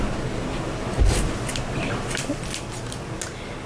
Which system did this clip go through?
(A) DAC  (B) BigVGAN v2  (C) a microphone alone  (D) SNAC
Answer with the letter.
C